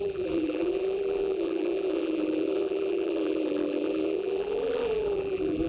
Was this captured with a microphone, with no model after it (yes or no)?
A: no